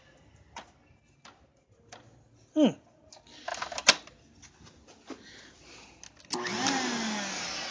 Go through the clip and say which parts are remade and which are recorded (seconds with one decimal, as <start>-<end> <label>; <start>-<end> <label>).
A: 0.0-7.7 recorded